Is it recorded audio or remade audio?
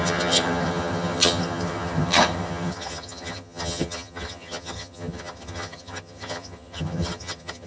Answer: remade